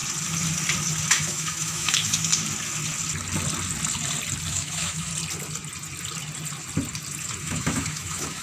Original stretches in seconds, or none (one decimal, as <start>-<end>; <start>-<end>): 0.0-1.1; 2.3-4.5; 5.1-7.4